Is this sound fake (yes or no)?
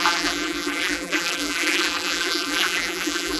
yes